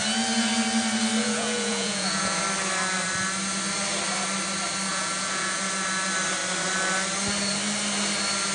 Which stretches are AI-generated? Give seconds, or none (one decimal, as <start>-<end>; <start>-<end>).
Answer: 1.2-2.4; 4.9-5.6